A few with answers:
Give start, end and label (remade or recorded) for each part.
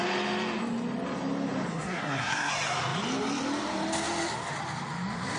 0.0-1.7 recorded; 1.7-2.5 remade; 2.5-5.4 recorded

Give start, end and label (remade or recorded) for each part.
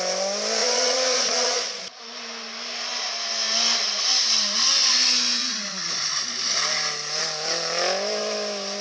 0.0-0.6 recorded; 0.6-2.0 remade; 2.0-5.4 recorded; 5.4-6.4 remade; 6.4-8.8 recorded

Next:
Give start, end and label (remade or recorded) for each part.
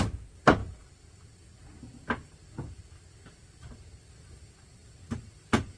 0.0-5.8 remade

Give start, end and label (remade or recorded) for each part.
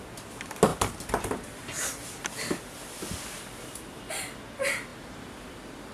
0.0-0.7 recorded; 0.7-4.1 remade; 4.1-4.9 recorded; 4.9-5.9 remade